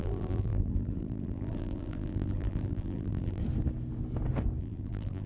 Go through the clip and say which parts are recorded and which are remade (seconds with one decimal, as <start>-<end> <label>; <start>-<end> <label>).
0.0-3.4 remade; 3.4-4.6 recorded; 4.6-5.3 remade